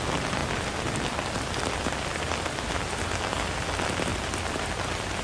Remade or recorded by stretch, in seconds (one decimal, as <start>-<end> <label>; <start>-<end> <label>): 0.0-5.2 recorded